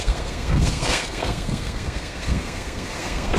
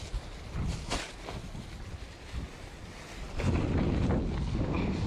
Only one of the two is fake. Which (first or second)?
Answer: first